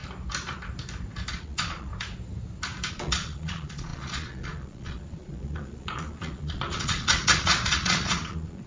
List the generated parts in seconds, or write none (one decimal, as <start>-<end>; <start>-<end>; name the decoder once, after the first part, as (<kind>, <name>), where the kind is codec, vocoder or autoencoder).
1.3-1.9 (vocoder, Vocos); 2.9-8.7